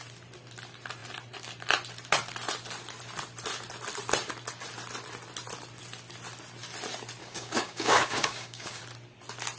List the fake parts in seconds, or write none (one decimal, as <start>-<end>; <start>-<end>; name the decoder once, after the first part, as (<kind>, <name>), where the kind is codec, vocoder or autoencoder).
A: 7.2-8.8 (codec, DAC)